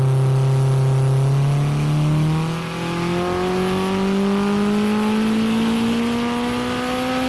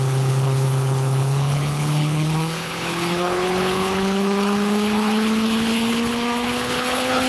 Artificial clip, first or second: second